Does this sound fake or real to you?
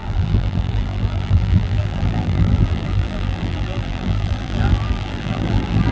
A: fake